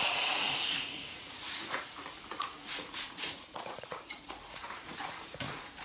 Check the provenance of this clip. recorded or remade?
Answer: remade